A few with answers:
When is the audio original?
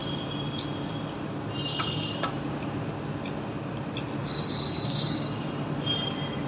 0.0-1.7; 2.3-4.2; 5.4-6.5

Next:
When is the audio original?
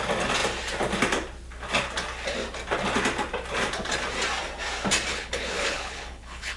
0.0-5.1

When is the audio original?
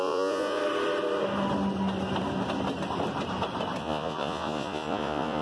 0.6-3.8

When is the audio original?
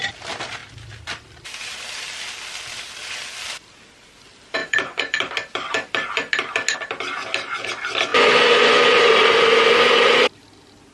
0.0-4.6; 5.3-8.1; 9.1-10.9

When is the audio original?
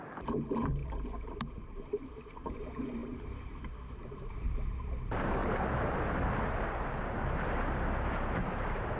5.4-7.0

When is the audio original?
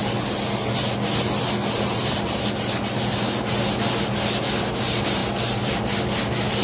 0.0-6.6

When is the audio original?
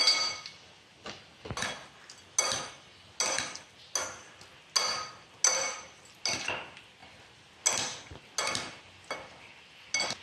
0.0-10.2